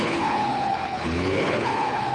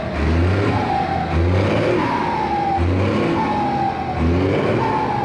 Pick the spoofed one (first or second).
first